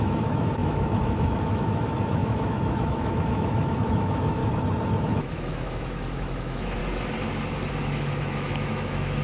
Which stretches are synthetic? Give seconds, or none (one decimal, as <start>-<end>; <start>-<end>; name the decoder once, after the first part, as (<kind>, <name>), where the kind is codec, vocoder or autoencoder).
0.0-4.4 (autoencoder, DAC-VAE); 5.0-6.8; 7.7-9.2